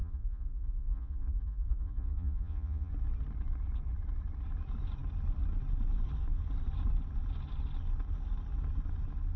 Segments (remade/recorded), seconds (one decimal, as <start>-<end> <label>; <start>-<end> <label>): 0.0-2.9 remade; 2.9-9.4 recorded